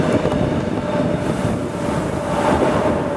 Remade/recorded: recorded